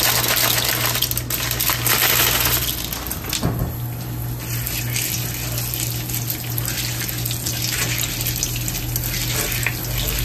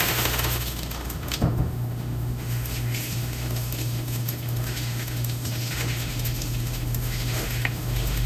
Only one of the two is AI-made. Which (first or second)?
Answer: second